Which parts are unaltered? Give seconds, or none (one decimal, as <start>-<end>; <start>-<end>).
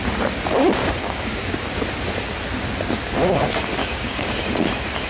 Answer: 0.0-0.8; 1.7-3.8; 4.4-5.1